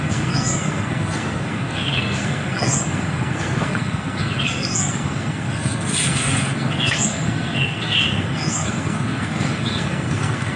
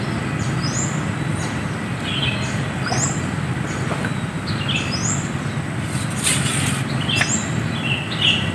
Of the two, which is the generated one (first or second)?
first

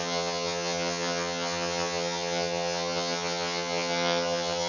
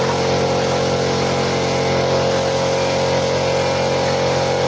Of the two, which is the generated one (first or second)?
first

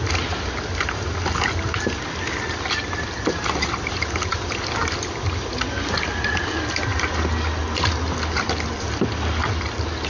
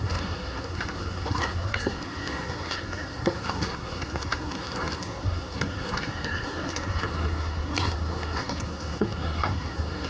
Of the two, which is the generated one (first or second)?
second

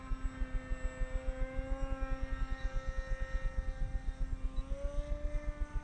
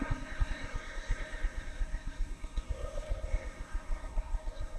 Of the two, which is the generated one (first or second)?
second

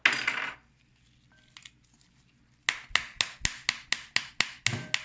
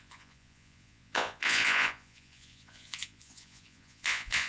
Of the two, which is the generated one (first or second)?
second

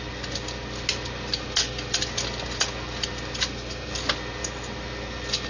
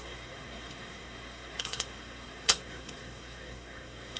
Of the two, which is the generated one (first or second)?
second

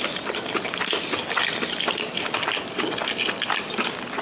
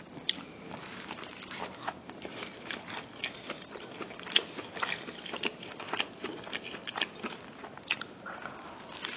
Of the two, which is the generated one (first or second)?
second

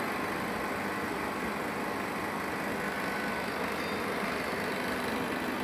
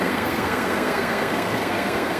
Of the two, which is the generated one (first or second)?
second